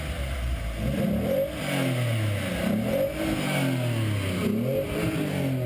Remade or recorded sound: recorded